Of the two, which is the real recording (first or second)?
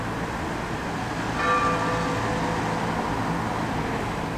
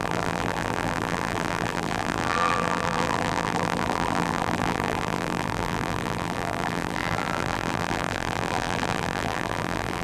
first